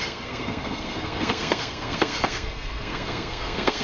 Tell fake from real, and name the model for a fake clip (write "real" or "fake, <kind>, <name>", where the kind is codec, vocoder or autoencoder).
fake, codec, SNAC